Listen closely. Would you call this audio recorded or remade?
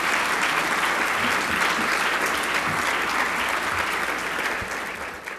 recorded